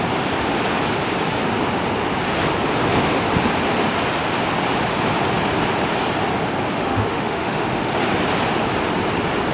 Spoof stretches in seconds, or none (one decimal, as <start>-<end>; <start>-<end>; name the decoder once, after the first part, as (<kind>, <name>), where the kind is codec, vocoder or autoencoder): 6.8-7.9 (autoencoder, DAC-VAE)